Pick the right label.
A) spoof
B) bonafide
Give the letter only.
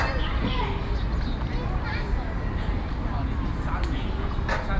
B